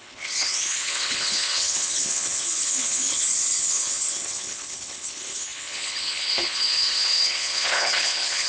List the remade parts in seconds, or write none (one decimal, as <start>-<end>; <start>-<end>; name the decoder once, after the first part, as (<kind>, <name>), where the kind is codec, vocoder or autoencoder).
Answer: 0.0-8.5 (codec, HILCodec)